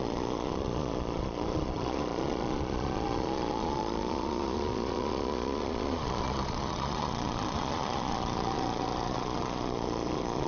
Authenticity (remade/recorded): remade